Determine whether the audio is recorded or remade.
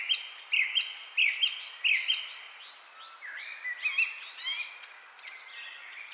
recorded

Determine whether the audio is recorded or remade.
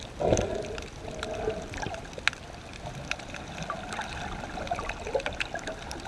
recorded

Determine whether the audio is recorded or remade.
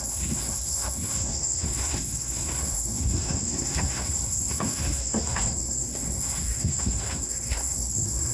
remade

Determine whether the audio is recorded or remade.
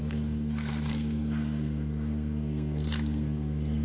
remade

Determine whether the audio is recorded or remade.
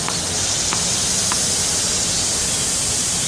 recorded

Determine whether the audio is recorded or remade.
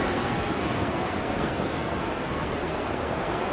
remade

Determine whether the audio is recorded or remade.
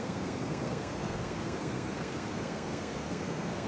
remade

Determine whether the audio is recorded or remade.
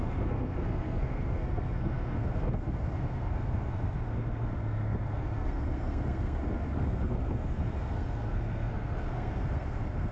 remade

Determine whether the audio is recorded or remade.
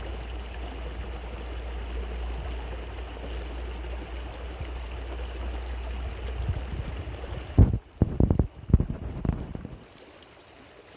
recorded